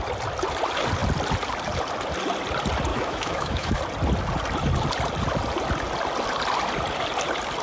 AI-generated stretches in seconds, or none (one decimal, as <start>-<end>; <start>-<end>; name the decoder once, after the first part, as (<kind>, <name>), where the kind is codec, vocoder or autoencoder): 2.9-3.8 (autoencoder, DAC-VAE)